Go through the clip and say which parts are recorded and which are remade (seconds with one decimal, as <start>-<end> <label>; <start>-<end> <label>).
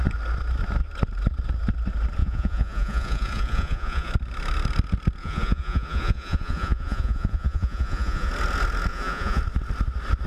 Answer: 0.0-2.2 recorded; 2.2-4.1 remade; 4.1-5.2 recorded; 5.2-8.3 remade; 8.3-8.9 recorded; 8.9-9.4 remade; 9.4-10.3 recorded